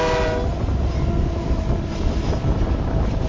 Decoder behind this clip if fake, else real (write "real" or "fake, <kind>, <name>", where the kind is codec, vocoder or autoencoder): real